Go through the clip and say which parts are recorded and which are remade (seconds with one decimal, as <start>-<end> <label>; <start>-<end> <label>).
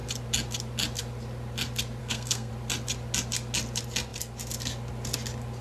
0.0-2.0 recorded; 2.0-2.5 remade; 2.5-5.6 recorded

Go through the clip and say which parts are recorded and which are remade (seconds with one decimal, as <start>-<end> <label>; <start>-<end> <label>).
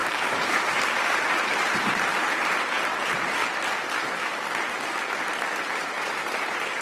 0.0-3.4 remade; 3.4-5.7 recorded; 5.7-6.8 remade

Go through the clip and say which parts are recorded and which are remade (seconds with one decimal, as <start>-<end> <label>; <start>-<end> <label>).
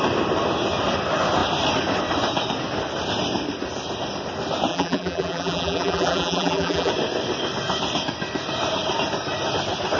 0.0-4.7 recorded; 4.7-6.9 remade; 6.9-10.0 recorded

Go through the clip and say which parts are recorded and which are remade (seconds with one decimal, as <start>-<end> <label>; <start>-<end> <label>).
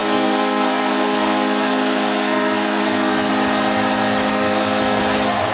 0.0-3.3 remade; 3.3-4.3 recorded; 4.3-5.0 remade; 5.0-5.5 recorded